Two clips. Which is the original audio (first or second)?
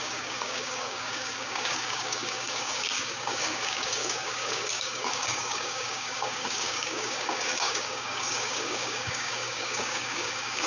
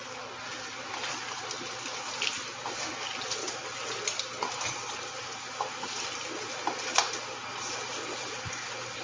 second